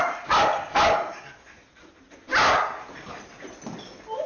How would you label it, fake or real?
real